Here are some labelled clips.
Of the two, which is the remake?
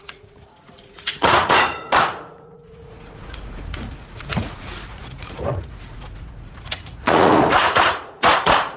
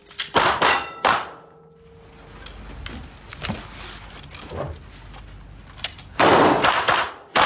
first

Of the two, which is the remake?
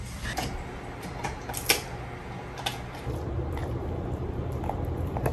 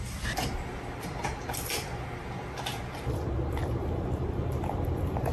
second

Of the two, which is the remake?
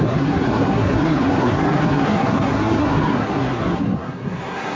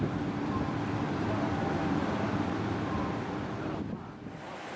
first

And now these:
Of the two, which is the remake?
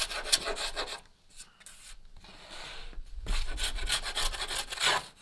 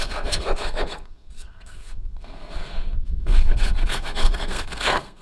second